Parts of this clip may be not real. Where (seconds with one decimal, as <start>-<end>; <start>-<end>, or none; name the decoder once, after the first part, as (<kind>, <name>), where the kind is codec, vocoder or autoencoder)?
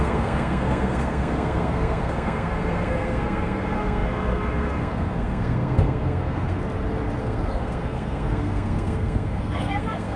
0.0-6.6 (codec, SNAC); 7.2-10.2